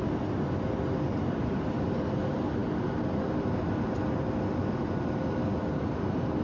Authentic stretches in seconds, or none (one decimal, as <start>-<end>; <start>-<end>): 0.0-6.4